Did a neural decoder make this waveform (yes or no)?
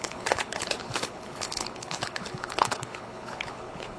yes